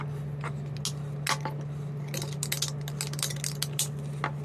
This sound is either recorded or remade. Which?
recorded